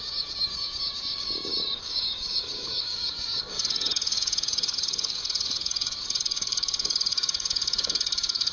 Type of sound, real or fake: fake